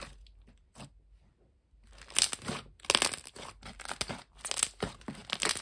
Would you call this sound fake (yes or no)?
no